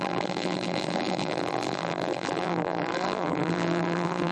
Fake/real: fake